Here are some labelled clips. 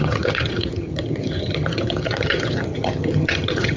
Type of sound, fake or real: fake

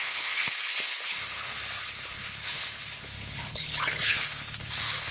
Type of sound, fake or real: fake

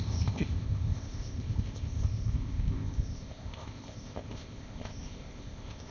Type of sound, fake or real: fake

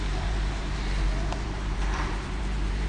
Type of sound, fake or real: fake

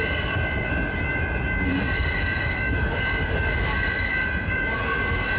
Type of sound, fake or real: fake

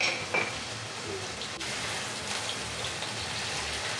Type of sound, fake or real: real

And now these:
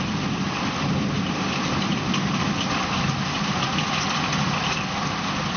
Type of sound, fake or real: real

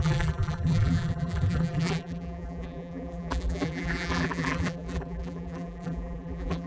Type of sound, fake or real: fake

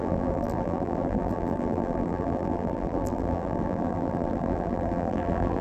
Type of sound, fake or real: fake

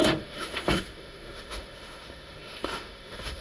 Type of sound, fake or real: fake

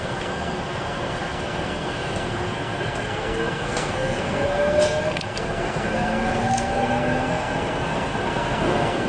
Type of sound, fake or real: fake